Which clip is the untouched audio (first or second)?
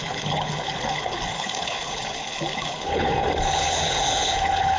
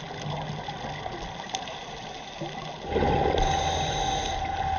second